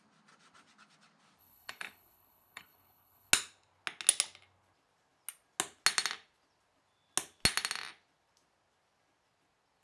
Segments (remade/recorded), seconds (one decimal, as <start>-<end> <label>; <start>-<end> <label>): 0.0-1.4 recorded; 1.4-3.3 remade; 3.3-9.8 recorded